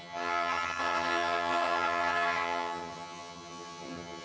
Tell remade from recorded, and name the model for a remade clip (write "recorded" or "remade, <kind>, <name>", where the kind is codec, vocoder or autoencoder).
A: remade, vocoder, HiFi-GAN